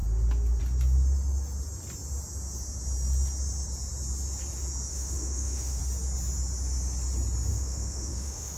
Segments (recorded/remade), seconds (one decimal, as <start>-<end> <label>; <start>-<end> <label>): 0.0-4.9 recorded; 4.9-5.8 remade; 5.8-7.5 recorded; 7.5-8.6 remade